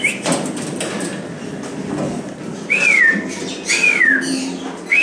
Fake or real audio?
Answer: real